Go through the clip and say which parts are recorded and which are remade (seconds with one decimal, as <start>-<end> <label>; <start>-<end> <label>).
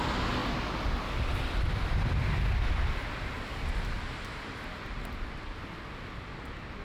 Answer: 0.0-6.8 recorded